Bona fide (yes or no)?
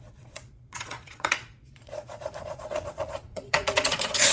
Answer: no